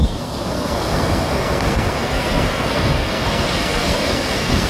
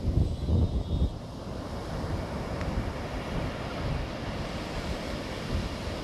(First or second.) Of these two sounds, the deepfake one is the first